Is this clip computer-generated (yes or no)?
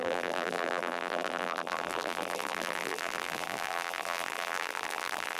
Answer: yes